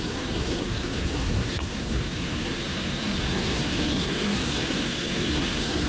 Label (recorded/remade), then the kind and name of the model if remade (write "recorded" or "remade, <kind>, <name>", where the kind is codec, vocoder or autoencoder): remade, codec, SNAC